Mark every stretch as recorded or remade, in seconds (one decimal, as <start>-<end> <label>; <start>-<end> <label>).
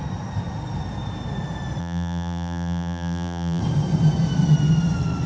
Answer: 0.0-1.8 recorded; 1.8-3.6 remade; 3.6-5.3 recorded